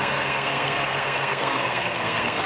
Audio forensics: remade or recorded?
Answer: remade